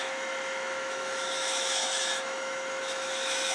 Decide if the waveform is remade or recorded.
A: remade